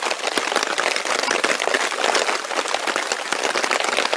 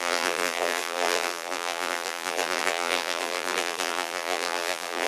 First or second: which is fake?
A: second